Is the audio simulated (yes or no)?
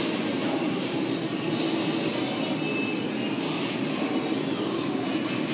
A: no